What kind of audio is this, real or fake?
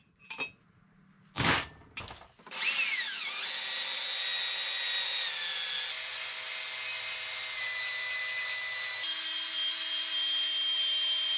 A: real